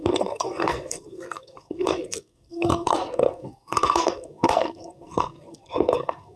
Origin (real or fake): fake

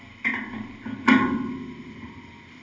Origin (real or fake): real